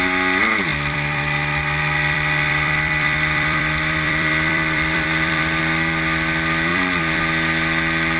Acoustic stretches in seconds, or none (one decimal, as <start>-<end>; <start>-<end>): 0.0-0.7; 5.6-6.7; 7.2-8.2